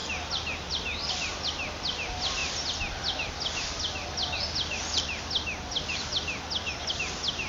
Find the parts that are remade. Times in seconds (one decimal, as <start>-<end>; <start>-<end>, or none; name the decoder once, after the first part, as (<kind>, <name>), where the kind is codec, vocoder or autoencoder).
none